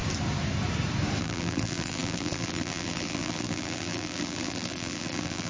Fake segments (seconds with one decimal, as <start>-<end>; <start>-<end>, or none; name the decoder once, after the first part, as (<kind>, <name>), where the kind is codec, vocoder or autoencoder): 1.2-5.5 (vocoder, BigVGAN v2)